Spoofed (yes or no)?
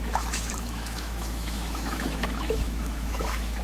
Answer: yes